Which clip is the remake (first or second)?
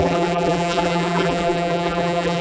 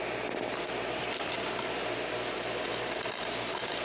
first